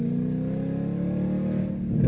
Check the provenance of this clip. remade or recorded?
recorded